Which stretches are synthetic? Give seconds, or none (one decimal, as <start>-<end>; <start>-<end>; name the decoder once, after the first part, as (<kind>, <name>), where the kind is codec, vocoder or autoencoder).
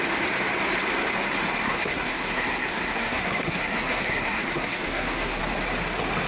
1.6-5.4 (codec, SNAC)